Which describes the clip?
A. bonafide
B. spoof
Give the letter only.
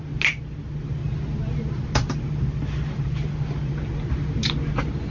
A